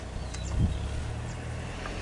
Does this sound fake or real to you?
real